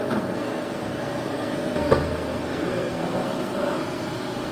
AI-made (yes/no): yes